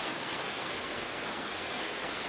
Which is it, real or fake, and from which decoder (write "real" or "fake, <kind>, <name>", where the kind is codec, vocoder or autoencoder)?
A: fake, codec, SNAC